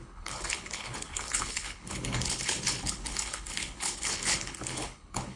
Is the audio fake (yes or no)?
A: yes